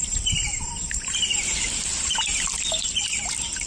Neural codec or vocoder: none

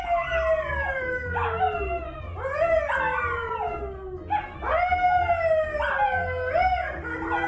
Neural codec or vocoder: none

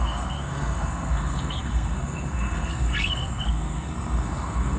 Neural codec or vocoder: codec, SNAC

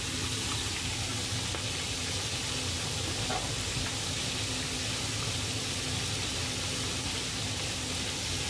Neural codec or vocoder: none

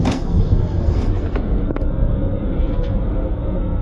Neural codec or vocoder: codec, SNAC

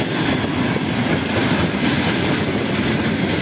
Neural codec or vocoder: none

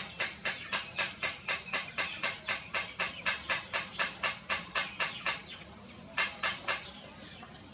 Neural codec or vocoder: none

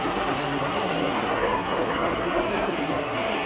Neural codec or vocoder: codec, SNAC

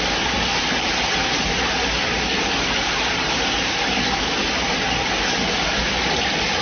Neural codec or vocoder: none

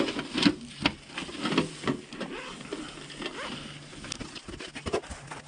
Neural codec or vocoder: none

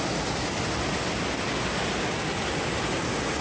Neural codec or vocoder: none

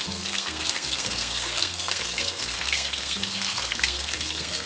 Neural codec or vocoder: codec, SNAC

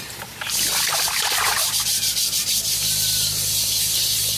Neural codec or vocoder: none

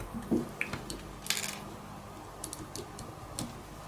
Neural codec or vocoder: none